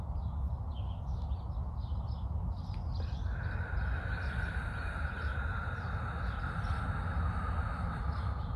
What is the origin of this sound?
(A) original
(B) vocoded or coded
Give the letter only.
A